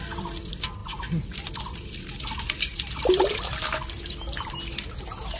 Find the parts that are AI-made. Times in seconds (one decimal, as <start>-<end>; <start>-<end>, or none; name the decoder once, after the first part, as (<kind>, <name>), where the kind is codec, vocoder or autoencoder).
0.0-5.4 (vocoder, BigVGAN v2)